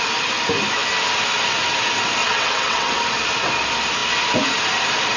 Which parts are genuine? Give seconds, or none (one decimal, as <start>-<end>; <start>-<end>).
0.0-2.2; 3.0-5.2